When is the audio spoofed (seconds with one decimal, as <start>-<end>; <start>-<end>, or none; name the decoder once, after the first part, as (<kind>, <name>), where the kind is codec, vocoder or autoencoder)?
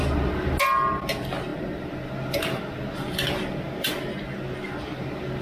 none